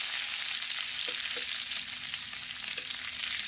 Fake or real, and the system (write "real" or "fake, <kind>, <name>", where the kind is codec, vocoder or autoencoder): real